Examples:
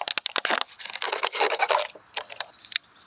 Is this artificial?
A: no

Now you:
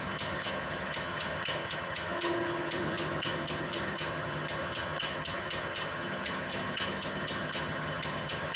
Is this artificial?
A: yes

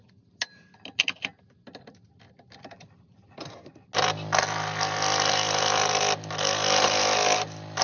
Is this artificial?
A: no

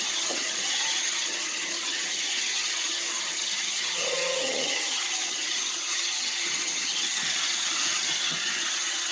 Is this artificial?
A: yes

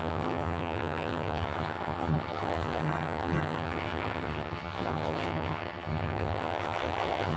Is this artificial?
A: yes